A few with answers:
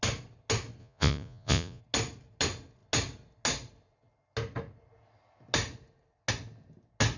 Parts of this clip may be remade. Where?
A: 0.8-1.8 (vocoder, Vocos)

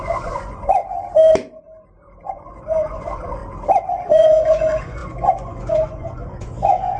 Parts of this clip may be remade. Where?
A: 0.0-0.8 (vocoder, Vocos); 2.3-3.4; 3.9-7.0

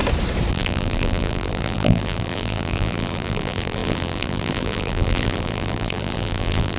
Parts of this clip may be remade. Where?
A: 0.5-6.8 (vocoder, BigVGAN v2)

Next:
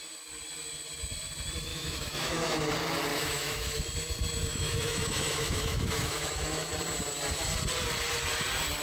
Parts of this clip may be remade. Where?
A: 1.7-2.7 (autoencoder, DAC-VAE); 3.1-3.8; 4.5-6.7